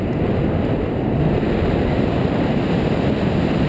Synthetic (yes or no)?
no